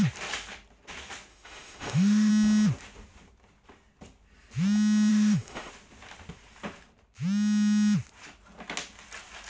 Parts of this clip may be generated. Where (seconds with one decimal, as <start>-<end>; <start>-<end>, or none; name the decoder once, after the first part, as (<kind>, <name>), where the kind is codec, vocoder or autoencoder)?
1.3-2.3 (autoencoder, DAC-VAE); 5.1-5.7